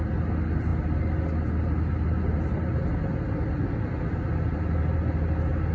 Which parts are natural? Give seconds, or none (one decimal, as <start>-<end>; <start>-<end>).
0.0-5.7